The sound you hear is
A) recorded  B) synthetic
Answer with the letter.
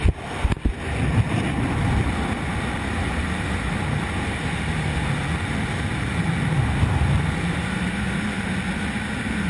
A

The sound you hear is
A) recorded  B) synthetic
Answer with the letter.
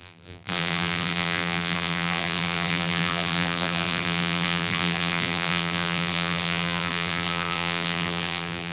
B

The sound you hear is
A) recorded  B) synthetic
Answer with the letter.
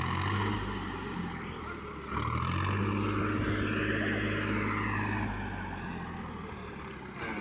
A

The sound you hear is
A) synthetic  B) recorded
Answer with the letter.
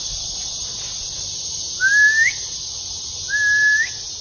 B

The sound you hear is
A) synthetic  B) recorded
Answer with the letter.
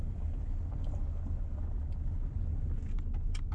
B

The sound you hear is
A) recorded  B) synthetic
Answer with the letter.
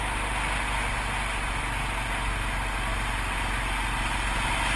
A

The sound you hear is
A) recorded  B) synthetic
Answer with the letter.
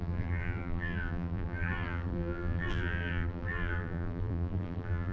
B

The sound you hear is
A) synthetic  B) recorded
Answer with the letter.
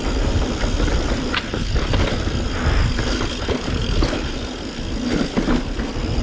B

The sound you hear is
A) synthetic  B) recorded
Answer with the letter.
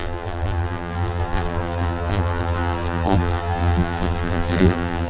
A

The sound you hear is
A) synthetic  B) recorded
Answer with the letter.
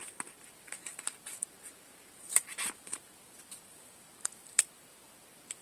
A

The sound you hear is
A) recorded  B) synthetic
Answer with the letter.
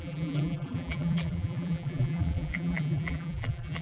B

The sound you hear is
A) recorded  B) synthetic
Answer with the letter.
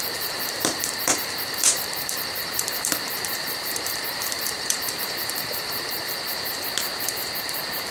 B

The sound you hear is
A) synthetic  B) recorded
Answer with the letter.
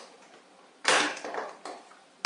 B